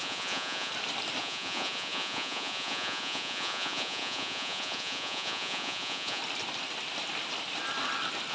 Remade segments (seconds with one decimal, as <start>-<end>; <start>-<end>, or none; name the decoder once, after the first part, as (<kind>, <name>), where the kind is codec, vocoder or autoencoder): 0.0-0.7 (vocoder, Vocos); 1.2-6.2